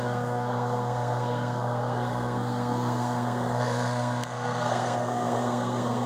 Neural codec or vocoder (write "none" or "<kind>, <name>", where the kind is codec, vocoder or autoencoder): codec, SNAC